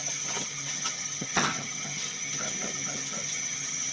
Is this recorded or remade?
remade